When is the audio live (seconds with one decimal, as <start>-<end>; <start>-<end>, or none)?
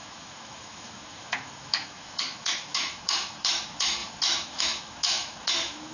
none